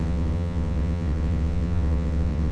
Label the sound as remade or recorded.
remade